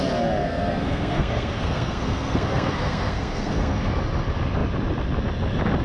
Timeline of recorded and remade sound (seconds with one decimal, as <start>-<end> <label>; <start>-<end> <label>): 0.0-0.4 recorded; 0.4-3.9 remade; 3.9-5.8 recorded